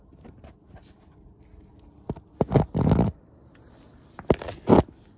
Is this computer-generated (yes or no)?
no